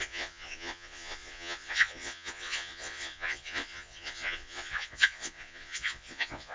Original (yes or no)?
no